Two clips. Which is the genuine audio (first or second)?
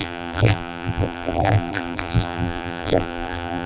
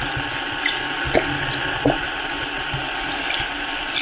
second